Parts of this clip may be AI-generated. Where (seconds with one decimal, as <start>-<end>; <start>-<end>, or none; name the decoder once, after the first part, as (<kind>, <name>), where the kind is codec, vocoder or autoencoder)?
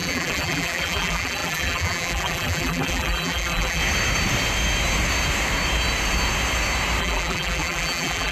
0.0-3.8 (vocoder, BigVGAN v2); 7.0-8.3